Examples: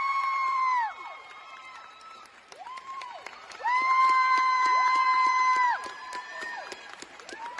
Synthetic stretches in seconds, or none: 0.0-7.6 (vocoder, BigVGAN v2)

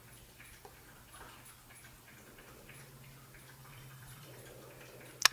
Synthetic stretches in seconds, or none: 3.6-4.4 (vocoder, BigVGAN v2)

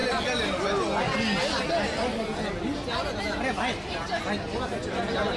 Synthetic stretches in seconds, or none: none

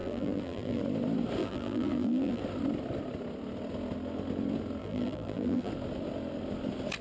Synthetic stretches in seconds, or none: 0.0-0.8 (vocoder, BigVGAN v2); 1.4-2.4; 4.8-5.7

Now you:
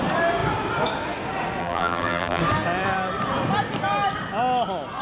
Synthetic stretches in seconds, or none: 1.6-2.4 (vocoder, BigVGAN v2)

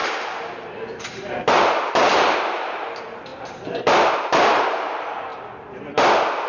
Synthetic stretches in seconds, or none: 0.0-3.3 (vocoder, BigVGAN v2); 4.1-5.3